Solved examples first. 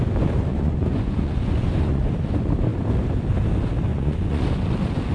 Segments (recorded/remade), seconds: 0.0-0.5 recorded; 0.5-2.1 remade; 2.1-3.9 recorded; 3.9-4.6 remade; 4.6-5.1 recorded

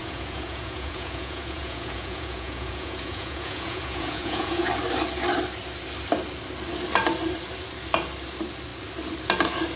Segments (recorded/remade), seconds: 0.0-4.7 remade; 4.7-9.8 recorded

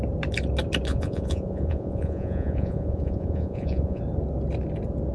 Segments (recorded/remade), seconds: 0.0-0.9 recorded; 0.9-4.0 remade; 4.0-5.1 recorded

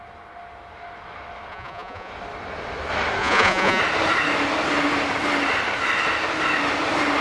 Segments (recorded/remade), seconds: 0.0-1.5 recorded; 1.5-2.1 remade; 2.1-3.2 recorded; 3.2-3.8 remade; 3.8-7.2 recorded

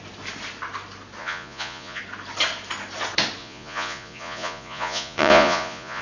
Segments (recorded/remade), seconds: 0.0-1.2 recorded; 1.2-2.0 remade; 2.0-3.4 recorded; 3.4-6.0 remade